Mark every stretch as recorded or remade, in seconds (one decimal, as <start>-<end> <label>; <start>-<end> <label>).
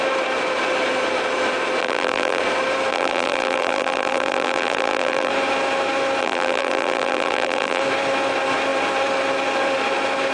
0.0-1.8 recorded; 1.8-2.4 remade; 2.4-2.9 recorded; 2.9-5.3 remade; 5.3-6.2 recorded; 6.2-7.8 remade; 7.8-10.3 recorded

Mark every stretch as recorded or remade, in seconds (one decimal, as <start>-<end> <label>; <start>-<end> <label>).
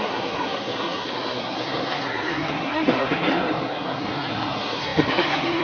0.0-5.6 remade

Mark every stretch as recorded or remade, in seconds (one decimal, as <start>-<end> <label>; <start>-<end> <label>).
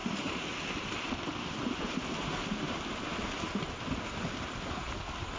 0.0-5.4 recorded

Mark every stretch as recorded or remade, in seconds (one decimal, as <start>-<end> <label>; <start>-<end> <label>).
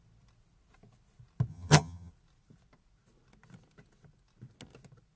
0.0-1.5 recorded; 1.5-2.1 remade; 2.1-5.2 recorded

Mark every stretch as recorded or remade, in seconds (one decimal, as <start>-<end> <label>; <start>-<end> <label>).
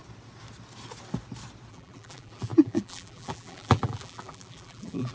0.0-1.7 recorded; 1.7-5.1 remade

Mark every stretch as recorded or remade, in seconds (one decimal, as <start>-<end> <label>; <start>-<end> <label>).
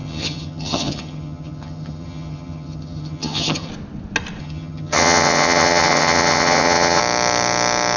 0.0-3.7 remade; 3.7-4.4 recorded; 4.4-7.0 remade; 7.0-8.0 recorded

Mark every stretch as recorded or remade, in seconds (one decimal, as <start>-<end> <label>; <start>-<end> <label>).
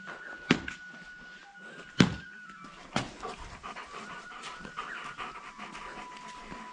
0.0-1.4 recorded; 1.4-5.4 remade; 5.4-6.7 recorded